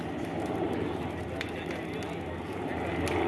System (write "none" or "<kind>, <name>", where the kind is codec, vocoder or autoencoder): none